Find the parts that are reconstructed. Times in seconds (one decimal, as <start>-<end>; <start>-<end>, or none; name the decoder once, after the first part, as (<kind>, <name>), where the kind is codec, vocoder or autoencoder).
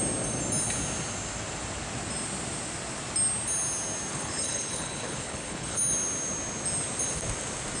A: 4.1-5.8 (codec, HILCodec)